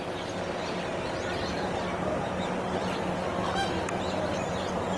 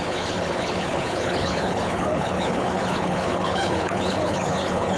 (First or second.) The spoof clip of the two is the second